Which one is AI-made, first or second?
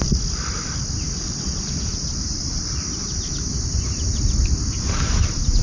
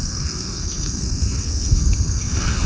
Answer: second